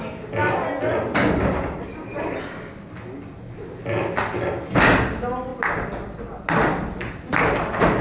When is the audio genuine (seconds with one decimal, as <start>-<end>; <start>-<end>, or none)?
0.0-8.0